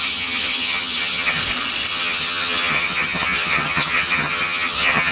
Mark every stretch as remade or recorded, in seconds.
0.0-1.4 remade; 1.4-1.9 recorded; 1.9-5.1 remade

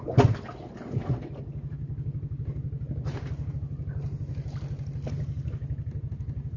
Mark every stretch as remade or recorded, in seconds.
0.0-6.6 recorded

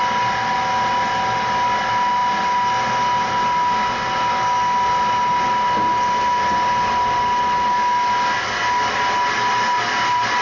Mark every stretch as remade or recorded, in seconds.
0.0-10.4 recorded

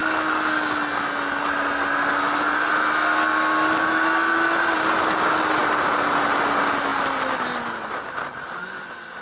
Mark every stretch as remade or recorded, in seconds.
0.0-9.2 recorded